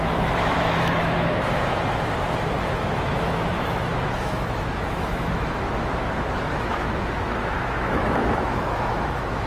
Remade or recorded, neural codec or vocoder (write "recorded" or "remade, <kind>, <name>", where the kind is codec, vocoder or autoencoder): remade, autoencoder, DAC-VAE